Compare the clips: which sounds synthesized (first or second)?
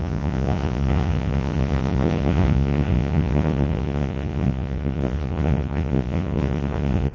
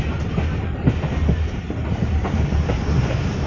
first